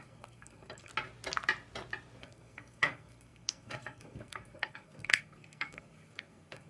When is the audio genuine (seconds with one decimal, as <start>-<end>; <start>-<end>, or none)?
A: 0.9-2.2